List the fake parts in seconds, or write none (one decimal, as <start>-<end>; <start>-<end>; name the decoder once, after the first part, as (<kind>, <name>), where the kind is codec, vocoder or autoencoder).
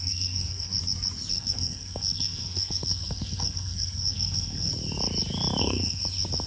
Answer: 0.0-0.7 (codec, SNAC); 1.3-4.7; 5.6-6.0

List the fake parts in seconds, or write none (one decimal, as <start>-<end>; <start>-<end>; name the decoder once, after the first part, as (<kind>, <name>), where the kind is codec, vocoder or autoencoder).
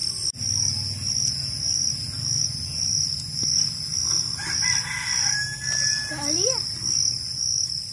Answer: none